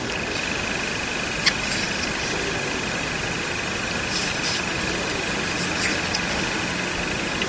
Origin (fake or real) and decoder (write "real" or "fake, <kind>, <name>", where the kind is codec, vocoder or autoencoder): real